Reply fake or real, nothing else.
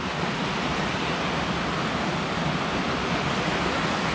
real